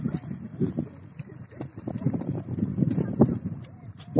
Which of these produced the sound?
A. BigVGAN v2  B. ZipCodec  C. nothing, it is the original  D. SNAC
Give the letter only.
A